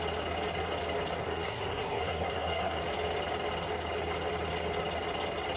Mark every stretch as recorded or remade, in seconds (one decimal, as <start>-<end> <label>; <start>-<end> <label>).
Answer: 0.0-1.2 recorded; 1.2-2.8 remade; 2.8-5.6 recorded